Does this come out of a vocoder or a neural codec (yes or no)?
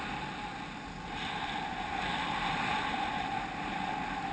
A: no